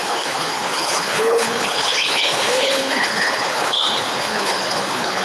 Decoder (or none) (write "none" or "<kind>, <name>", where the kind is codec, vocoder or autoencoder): codec, HILCodec